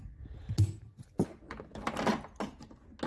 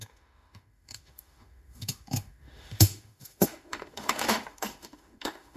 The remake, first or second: second